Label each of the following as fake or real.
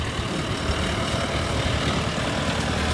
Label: fake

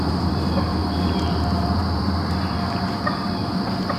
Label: fake